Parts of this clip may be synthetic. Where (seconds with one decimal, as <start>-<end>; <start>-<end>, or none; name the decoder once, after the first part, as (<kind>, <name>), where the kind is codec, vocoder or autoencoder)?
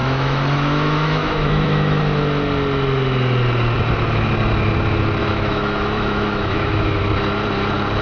0.0-2.0 (autoencoder, DAC-VAE); 5.2-7.0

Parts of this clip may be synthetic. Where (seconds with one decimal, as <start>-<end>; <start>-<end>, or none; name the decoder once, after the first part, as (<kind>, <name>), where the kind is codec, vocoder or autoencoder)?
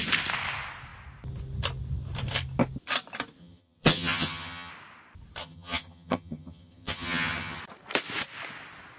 3.4-4.7 (vocoder, HiFi-GAN); 5.4-7.6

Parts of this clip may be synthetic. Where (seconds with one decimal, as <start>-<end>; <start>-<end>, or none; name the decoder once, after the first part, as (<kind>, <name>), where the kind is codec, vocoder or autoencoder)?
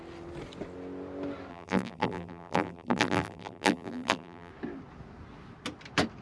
1.5-4.5 (vocoder, BigVGAN v2)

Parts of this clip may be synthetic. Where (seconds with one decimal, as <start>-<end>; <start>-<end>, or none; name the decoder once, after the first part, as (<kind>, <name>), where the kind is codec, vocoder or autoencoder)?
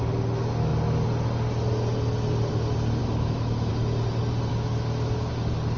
3.0-3.7 (autoencoder, DAC-VAE); 4.5-5.3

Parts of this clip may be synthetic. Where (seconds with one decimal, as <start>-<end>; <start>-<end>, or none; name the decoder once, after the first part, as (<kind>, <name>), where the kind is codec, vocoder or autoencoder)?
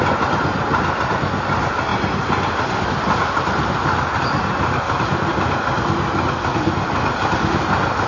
none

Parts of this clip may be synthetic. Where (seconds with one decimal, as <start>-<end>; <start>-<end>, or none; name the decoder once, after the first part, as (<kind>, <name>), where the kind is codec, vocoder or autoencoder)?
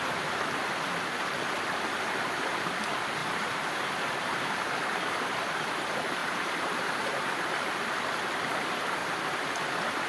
3.2-4.5 (vocoder, BigVGAN v2); 6.2-7.2; 9.0-9.5